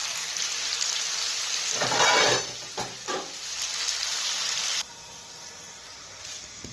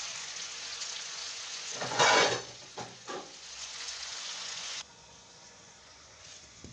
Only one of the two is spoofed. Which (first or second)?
second